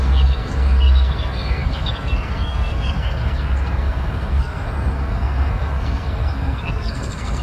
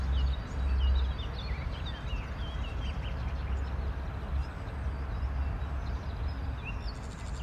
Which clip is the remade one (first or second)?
first